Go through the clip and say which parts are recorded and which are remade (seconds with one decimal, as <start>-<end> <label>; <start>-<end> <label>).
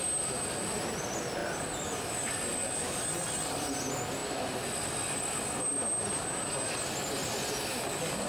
0.0-7.2 recorded; 7.2-7.7 remade; 7.7-8.3 recorded